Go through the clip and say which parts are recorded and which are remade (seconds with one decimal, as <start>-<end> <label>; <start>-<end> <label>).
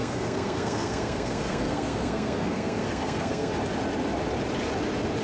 0.0-3.5 remade; 3.5-5.2 recorded